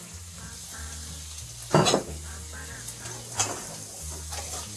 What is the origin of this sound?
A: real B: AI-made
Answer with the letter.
A